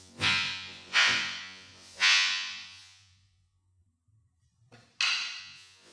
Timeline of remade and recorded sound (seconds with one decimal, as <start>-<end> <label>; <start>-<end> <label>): 0.0-3.8 remade; 3.8-5.4 recorded; 5.4-5.9 remade